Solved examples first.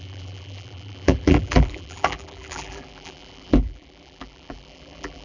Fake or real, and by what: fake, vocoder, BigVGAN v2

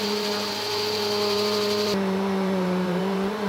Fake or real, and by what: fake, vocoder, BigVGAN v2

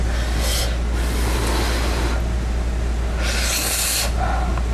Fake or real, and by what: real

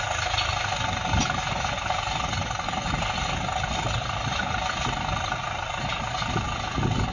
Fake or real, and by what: real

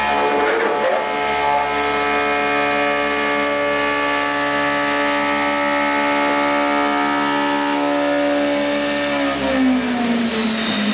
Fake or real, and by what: real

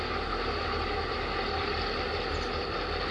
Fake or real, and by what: real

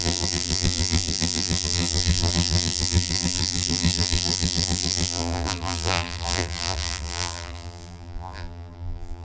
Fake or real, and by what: fake, vocoder, BigVGAN v2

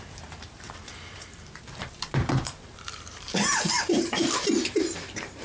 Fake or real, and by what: fake, vocoder, BigVGAN v2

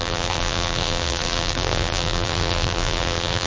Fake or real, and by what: fake, vocoder, BigVGAN v2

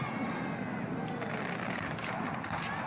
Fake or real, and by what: real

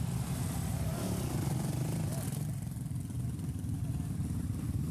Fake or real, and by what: fake, vocoder, BigVGAN v2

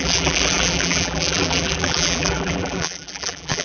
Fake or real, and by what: fake, vocoder, BigVGAN v2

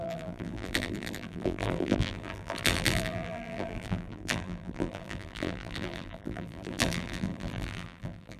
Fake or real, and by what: fake, vocoder, BigVGAN v2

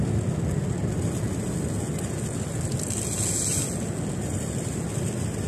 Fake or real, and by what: real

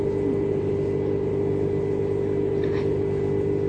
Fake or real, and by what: real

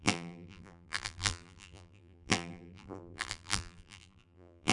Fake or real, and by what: fake, vocoder, BigVGAN v2